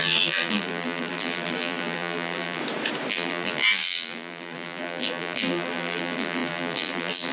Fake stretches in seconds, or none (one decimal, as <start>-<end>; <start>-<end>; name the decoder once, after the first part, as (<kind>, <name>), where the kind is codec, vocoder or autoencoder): 0.0-2.6 (vocoder, BigVGAN v2); 3.1-7.3